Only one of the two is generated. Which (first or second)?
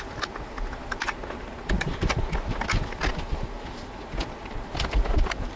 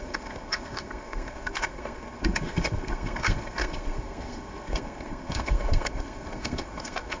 second